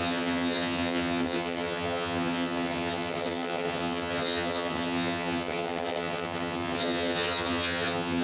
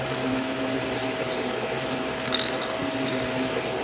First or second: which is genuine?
second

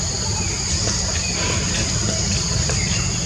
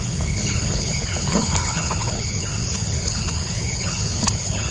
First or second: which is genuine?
first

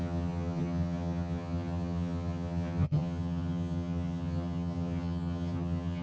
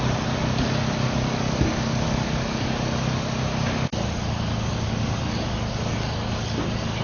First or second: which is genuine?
second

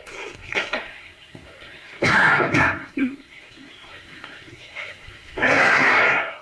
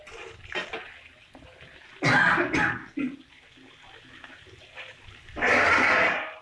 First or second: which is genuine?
second